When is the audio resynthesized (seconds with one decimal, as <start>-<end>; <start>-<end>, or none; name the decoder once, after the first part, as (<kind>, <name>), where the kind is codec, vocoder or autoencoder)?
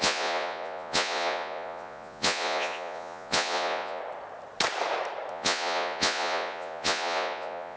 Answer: 0.0-4.0 (vocoder, Vocos); 5.3-7.8